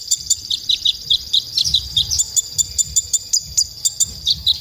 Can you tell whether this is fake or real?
fake